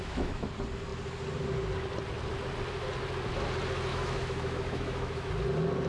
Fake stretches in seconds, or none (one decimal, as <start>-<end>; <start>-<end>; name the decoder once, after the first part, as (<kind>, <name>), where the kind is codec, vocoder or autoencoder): 0.0-0.5 (autoencoder, DAC-VAE); 3.9-5.3